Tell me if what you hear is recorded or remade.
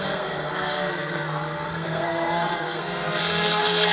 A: remade